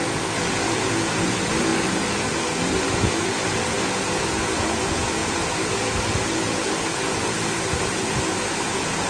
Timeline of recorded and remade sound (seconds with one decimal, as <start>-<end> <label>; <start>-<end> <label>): 0.0-9.1 remade